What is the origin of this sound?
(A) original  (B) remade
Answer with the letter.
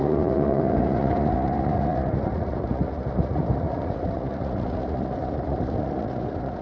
B